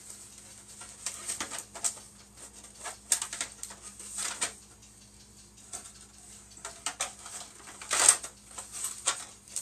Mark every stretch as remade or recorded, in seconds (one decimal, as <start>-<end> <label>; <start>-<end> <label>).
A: 0.0-9.6 recorded